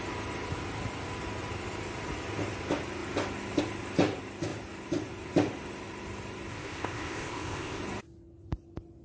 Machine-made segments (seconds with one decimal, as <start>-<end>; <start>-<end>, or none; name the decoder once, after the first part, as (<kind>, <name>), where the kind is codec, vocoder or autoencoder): 6.5-7.8 (codec, ZipCodec)